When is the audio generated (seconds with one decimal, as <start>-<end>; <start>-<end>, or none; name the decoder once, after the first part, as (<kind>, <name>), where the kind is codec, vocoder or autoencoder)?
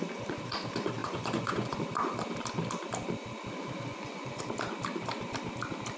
1.0-1.8 (vocoder, Vocos); 3.9-4.4